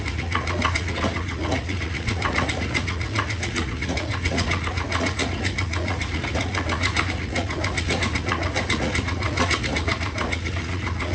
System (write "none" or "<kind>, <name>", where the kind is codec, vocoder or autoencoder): vocoder, Vocos